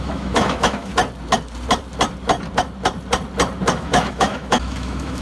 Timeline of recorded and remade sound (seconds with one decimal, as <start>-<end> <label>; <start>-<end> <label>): 0.0-0.9 remade; 0.9-3.7 recorded; 3.7-5.2 remade